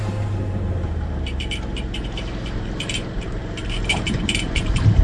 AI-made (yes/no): yes